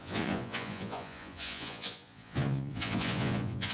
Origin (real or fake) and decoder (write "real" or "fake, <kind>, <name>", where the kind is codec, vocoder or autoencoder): fake, vocoder, Vocos